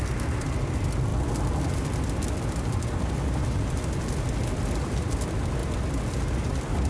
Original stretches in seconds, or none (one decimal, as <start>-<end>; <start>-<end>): 0.0-6.9